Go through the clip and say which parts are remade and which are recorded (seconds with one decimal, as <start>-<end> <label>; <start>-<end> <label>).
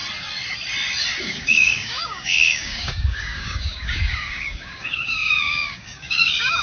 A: 0.0-1.2 recorded; 1.2-6.6 remade